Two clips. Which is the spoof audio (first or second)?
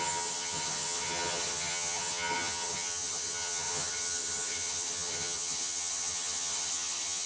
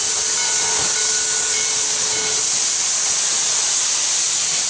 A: first